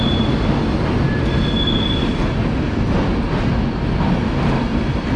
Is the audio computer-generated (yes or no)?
no